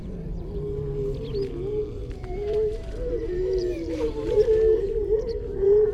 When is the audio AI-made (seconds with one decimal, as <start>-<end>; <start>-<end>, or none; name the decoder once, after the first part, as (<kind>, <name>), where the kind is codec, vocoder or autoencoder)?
2.2-4.3 (vocoder, BigVGAN v2)